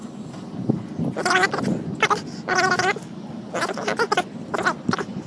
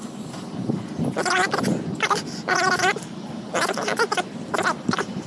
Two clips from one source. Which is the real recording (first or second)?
first